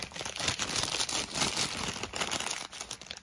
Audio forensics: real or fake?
real